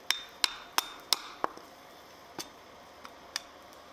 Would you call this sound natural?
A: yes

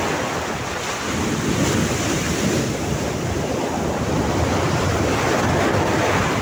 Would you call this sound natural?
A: yes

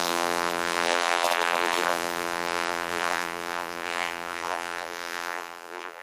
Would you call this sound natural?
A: no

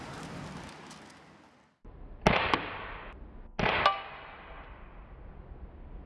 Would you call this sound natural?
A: yes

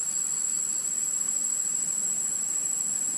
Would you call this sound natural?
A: yes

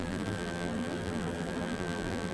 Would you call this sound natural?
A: no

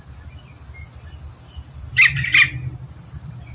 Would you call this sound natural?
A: yes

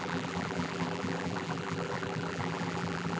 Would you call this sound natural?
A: no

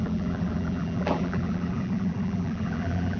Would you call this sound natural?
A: no